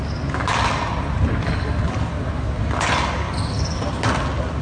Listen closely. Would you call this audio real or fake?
real